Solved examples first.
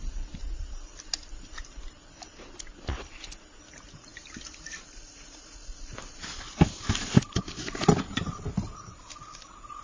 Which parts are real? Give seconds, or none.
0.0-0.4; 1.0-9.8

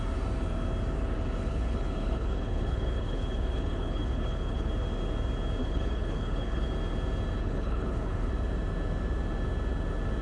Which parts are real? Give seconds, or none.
0.0-1.4; 4.7-5.6; 6.7-7.4; 8.3-10.2

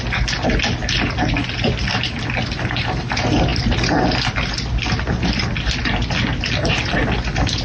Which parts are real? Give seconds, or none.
0.0-7.6

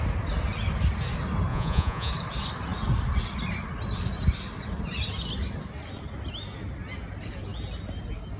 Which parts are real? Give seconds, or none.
0.0-1.5; 2.1-8.4

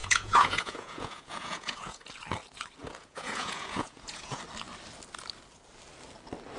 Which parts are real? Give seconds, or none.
2.1-2.8; 4.4-6.6

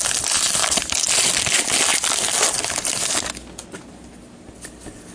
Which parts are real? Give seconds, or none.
0.0-5.1